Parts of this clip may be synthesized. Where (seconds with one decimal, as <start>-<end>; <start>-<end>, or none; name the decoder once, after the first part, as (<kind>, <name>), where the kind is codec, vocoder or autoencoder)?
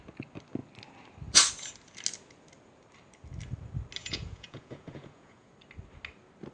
4.0-5.5 (vocoder, Vocos)